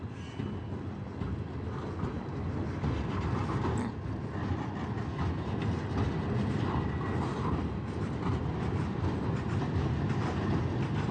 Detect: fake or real real